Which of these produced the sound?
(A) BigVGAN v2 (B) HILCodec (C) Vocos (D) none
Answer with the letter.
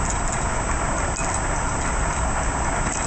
D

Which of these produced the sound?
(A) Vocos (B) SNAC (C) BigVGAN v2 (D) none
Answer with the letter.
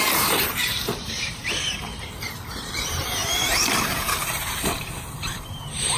C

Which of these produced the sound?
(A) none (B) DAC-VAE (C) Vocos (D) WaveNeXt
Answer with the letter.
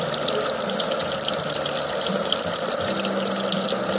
A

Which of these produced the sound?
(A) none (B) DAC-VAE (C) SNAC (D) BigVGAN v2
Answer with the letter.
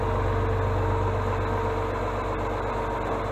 A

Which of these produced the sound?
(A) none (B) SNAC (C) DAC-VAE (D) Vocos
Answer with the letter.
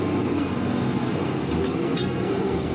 B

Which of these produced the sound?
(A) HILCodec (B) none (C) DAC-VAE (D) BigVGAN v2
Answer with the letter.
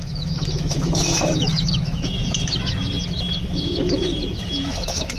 C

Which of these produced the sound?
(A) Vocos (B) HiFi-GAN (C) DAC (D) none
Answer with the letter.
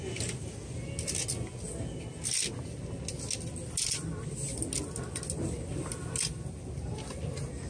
D